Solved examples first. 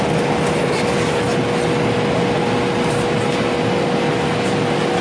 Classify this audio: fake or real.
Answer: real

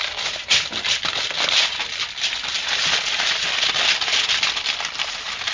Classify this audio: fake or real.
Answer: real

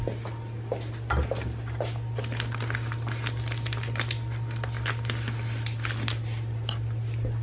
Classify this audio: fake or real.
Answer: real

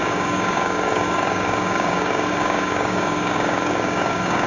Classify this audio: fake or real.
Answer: fake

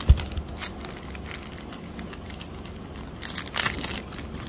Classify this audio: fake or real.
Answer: real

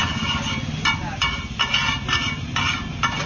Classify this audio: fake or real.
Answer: real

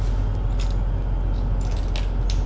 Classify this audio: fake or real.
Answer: real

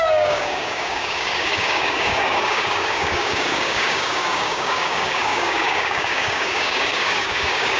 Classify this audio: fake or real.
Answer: fake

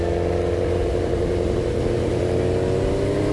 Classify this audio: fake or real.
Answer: real